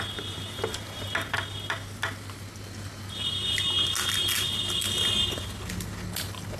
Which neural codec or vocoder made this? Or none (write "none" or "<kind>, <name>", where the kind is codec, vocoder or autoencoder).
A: none